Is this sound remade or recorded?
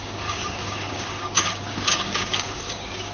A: remade